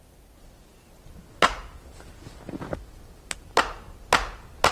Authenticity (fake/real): real